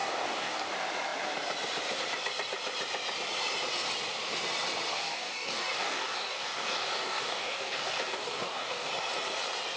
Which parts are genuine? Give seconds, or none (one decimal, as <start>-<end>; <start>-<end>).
0.7-4.9; 8.9-9.8